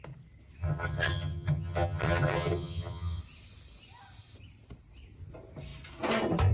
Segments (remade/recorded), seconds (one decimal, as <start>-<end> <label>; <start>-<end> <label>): 0.0-0.6 recorded; 0.6-3.2 remade; 3.2-6.5 recorded